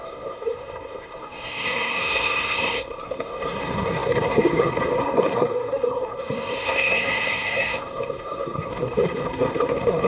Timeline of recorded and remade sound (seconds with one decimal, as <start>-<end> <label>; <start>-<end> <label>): 0.0-10.1 remade